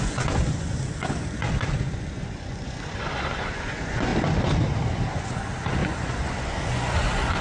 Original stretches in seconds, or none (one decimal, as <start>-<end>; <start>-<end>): 4.1-5.1